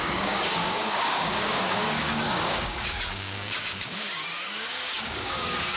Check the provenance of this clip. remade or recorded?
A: remade